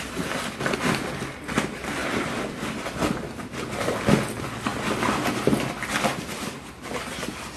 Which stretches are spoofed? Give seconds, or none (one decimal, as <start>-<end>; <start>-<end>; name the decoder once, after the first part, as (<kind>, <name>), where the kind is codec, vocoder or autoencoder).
none